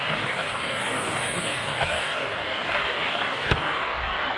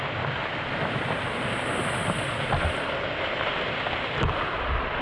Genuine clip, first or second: second